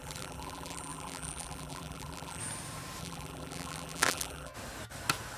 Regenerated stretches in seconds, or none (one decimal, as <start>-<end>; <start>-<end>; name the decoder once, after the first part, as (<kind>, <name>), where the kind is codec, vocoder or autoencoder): 0.0-2.4 (vocoder, BigVGAN v2); 3.0-4.5